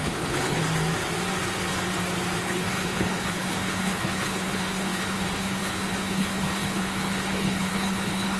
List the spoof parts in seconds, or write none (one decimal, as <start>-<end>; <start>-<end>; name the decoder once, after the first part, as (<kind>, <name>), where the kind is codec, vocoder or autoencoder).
0.0-0.6 (codec, HILCodec); 2.4-8.4